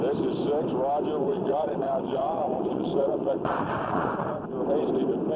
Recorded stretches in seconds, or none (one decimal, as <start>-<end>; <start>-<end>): 0.0-1.2; 4.4-5.4